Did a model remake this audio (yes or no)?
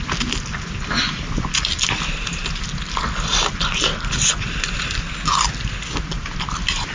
no